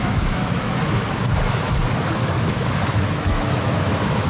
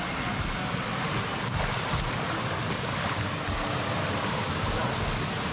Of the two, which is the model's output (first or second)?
first